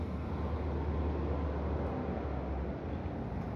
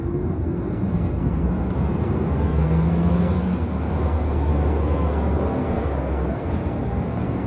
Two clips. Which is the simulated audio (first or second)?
second